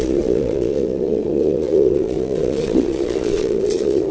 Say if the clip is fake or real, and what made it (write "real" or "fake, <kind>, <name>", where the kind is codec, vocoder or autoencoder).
fake, vocoder, Vocos